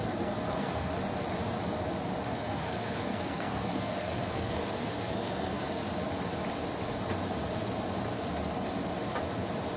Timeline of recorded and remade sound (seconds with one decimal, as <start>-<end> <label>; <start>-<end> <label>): 0.0-0.9 remade; 0.9-2.2 recorded; 2.2-5.8 remade; 5.8-9.8 recorded